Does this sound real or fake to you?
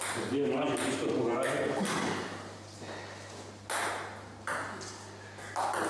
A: real